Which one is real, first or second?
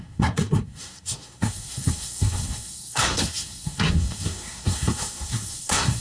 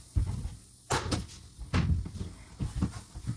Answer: second